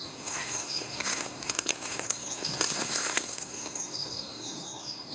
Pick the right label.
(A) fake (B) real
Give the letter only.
A